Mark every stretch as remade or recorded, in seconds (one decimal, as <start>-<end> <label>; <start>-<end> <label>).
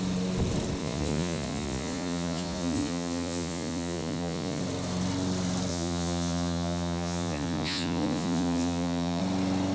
0.0-0.8 recorded; 0.8-4.6 remade; 4.6-5.7 recorded; 5.7-9.2 remade; 9.2-9.7 recorded